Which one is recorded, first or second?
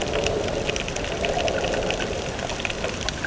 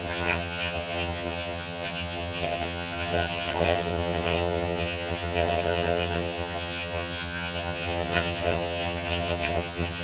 first